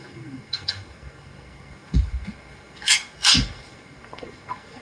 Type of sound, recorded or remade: remade